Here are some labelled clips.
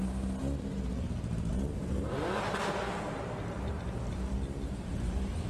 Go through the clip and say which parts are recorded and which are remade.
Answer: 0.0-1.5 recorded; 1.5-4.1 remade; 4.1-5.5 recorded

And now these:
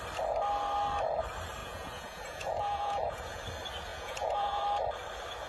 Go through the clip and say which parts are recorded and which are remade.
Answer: 0.0-1.6 recorded; 1.6-3.4 remade; 3.4-3.9 recorded; 3.9-4.6 remade; 4.6-5.5 recorded

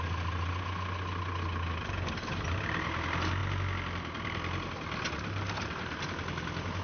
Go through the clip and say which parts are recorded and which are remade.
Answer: 0.0-6.8 recorded